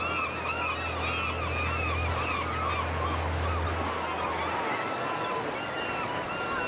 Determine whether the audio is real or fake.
real